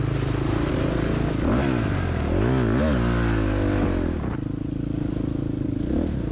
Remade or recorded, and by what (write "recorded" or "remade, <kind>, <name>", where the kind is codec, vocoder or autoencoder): recorded